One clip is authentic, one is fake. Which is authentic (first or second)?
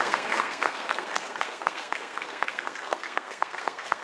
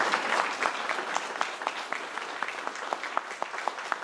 second